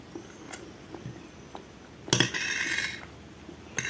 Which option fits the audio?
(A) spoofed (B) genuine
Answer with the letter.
B